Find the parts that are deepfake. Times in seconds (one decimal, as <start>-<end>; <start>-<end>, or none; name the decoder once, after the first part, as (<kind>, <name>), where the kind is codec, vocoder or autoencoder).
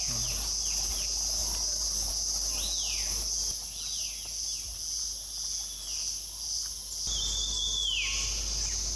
none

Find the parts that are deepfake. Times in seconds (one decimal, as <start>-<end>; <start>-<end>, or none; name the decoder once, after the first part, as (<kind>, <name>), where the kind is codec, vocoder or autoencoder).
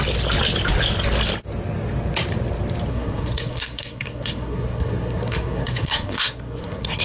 2.9-7.0 (codec, SNAC)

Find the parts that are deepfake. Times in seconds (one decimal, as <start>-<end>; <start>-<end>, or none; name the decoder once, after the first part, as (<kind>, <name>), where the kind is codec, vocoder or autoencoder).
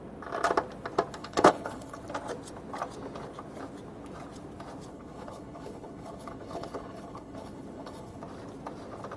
1.2-2.0 (codec, HILCodec); 4.9-8.2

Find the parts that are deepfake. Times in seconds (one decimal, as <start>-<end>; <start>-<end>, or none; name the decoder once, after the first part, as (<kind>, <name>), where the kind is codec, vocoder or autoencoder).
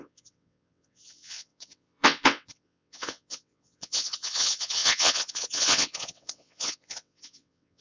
0.0-7.8 (vocoder, WaveNeXt)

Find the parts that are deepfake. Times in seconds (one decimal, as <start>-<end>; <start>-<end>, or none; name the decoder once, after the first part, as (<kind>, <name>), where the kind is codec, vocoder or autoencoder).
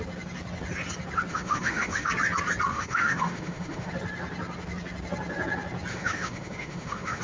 1.3-2.1 (autoencoder, DAC-VAE); 2.7-3.9; 5.9-7.2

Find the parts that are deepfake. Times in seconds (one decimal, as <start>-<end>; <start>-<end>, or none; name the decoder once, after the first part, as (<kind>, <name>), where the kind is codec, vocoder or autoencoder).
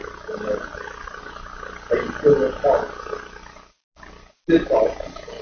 none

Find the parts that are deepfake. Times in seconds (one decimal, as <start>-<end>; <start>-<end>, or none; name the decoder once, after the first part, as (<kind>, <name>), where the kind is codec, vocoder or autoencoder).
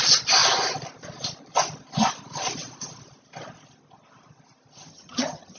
4.9-5.6 (vocoder, HiFi-GAN)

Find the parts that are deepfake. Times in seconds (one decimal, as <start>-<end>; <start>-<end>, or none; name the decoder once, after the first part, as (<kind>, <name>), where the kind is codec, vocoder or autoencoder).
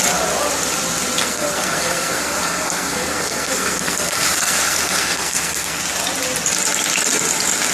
1.2-5.8 (codec, SNAC)